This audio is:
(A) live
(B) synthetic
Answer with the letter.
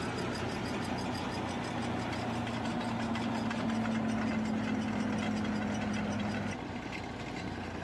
A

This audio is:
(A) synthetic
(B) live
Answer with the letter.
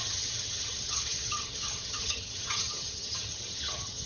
A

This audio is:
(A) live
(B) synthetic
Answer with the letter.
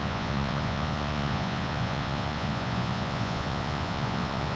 B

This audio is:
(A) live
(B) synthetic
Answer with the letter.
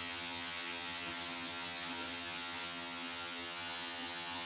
B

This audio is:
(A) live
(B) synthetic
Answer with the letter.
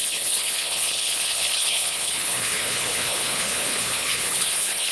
B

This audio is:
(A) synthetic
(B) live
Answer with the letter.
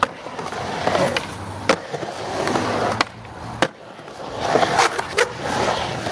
B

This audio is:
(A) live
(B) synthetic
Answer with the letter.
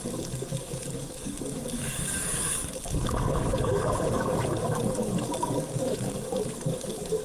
B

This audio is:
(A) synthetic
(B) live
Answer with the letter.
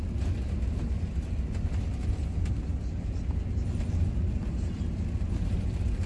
B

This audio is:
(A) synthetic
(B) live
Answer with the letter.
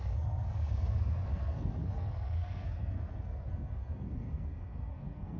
A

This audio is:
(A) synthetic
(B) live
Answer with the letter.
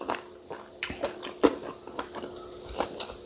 A